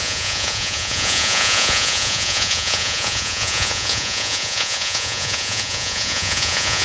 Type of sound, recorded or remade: remade